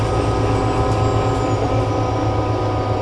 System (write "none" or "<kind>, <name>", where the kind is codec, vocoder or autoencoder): none